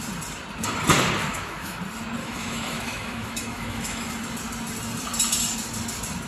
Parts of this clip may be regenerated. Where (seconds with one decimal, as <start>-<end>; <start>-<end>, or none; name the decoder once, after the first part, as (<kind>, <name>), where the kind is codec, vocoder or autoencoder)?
1.3-1.8 (autoencoder, DAC-VAE); 2.2-4.1